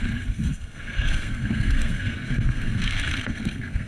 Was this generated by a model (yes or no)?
yes